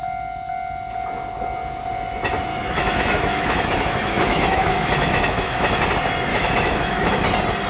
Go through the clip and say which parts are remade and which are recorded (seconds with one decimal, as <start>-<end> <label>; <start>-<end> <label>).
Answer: 0.0-2.5 recorded; 2.5-5.8 remade; 5.8-6.3 recorded; 6.3-7.1 remade; 7.1-7.7 recorded